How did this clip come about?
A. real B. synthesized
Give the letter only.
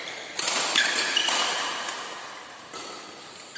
A